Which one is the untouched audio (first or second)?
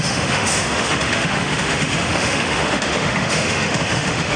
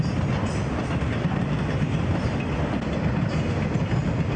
second